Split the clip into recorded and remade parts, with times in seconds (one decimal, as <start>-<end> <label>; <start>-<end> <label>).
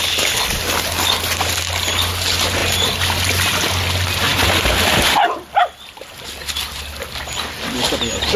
0.0-8.4 recorded